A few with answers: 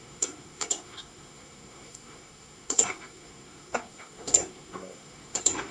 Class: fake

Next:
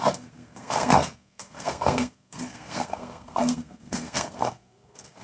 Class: fake